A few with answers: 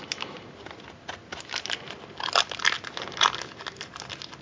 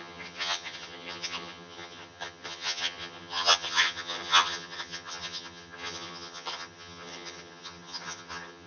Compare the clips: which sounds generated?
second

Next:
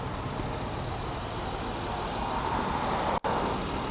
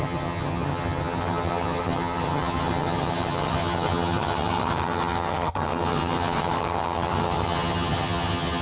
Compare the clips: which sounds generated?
second